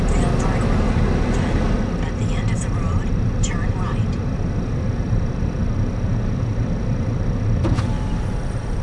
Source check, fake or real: real